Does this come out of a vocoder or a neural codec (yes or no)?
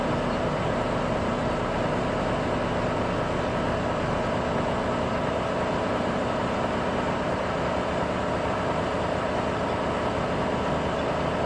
no